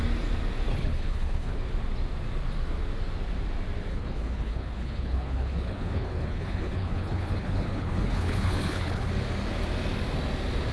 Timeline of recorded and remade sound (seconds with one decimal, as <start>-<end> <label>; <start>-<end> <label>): 0.0-0.7 recorded; 0.7-1.6 remade; 1.6-3.9 recorded; 3.9-9.1 remade; 9.1-10.7 recorded